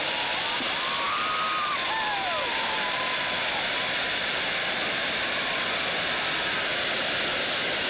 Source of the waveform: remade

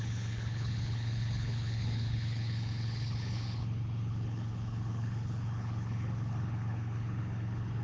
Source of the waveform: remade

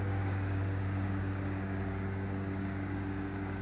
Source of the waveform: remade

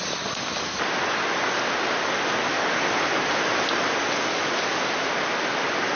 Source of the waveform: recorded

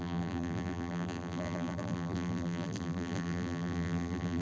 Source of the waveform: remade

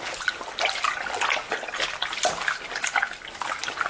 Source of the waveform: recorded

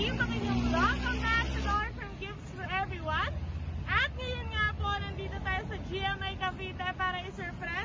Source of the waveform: recorded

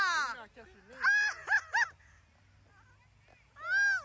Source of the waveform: recorded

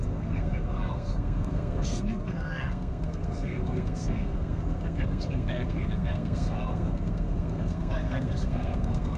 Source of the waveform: remade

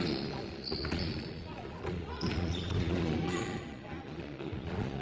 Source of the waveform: remade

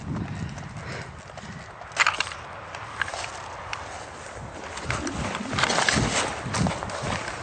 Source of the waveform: recorded